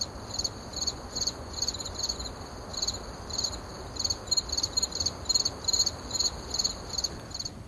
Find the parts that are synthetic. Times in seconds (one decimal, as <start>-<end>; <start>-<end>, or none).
0.7-2.3